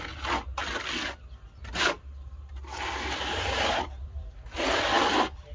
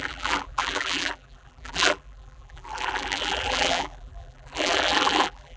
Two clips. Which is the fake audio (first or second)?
second